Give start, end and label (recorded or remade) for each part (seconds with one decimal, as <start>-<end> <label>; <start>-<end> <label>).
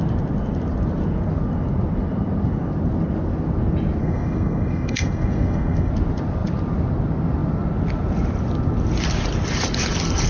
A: 0.0-4.0 recorded; 4.0-5.9 remade; 5.9-10.3 recorded